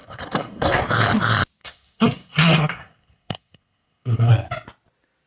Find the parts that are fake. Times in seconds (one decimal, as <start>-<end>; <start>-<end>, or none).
0.0-0.8; 1.6-4.3